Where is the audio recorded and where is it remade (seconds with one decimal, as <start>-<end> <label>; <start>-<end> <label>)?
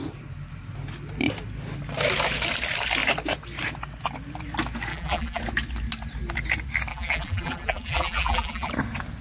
0.0-4.9 recorded; 4.9-5.4 remade; 5.4-6.9 recorded; 6.9-8.7 remade; 8.7-9.2 recorded